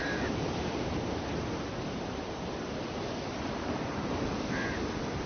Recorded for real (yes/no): no